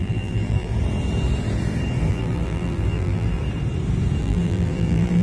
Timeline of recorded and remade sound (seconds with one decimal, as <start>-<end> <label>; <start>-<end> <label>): 0.0-0.7 remade; 0.7-2.1 recorded; 2.1-3.4 remade; 3.4-4.2 recorded; 4.2-5.2 remade